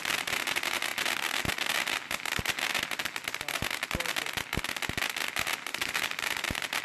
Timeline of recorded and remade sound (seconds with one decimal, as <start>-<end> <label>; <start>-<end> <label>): 0.0-5.7 recorded; 5.7-6.8 remade